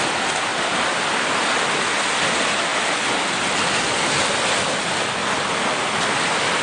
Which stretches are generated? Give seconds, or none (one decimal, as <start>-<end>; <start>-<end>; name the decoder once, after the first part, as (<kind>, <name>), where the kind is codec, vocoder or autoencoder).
none